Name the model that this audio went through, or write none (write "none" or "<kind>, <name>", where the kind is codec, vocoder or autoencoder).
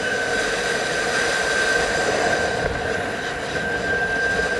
none